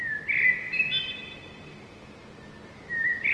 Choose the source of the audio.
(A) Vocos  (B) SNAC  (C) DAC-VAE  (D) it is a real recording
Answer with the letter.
D